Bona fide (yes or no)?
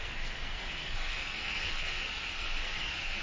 no